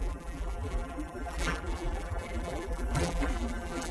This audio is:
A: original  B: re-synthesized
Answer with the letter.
B